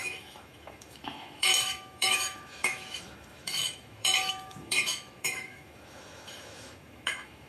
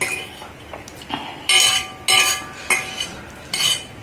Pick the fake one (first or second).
first